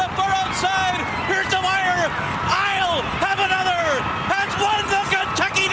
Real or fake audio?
real